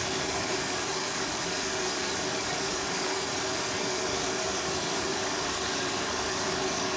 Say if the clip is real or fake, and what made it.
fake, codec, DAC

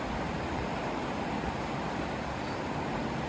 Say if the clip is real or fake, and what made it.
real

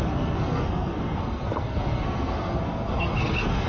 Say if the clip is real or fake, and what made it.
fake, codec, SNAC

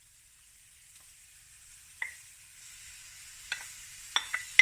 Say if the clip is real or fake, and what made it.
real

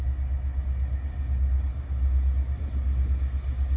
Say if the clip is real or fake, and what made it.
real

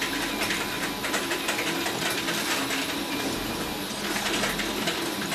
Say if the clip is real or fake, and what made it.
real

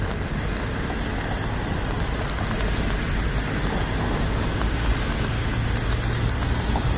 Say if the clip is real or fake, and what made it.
real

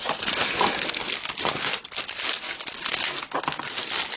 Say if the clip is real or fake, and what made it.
real